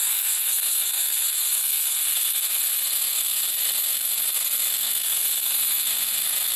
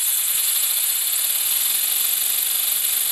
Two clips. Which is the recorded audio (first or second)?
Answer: second